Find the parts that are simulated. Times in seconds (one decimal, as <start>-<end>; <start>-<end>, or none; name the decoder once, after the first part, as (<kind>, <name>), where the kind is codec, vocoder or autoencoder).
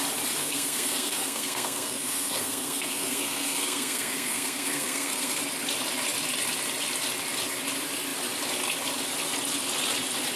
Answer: 0.4-5.4 (codec, SNAC)